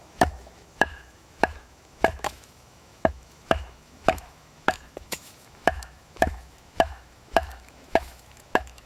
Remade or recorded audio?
remade